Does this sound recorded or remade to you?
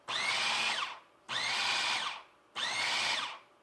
recorded